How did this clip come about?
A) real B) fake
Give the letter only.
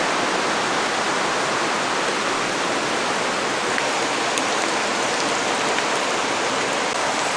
A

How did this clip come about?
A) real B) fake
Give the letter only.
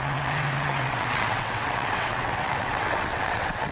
B